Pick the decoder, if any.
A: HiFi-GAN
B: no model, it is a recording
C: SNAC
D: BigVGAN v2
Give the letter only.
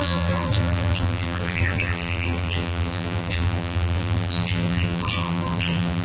D